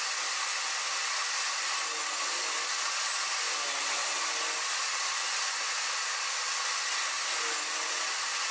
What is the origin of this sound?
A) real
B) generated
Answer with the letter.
A